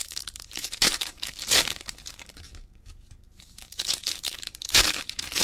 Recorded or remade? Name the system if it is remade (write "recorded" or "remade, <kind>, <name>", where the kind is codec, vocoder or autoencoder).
remade, codec, DAC